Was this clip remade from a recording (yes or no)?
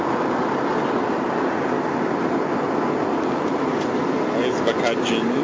no